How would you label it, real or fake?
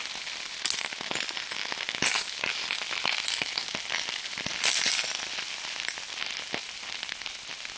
real